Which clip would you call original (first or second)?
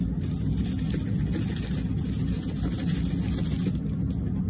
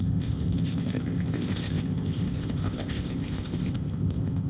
first